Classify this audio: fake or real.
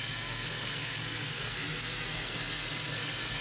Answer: fake